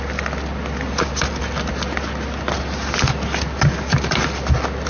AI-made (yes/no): no